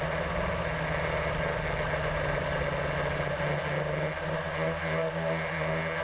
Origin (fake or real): real